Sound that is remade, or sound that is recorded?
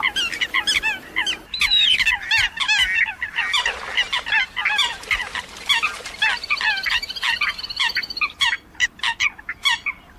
recorded